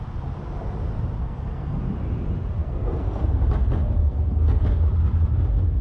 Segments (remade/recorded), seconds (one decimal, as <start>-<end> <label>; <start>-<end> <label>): 0.0-1.2 recorded; 1.2-1.8 remade; 1.8-2.6 recorded; 2.6-3.4 remade; 3.4-4.0 recorded; 4.0-4.6 remade; 4.6-5.8 recorded